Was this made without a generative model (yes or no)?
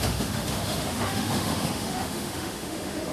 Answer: no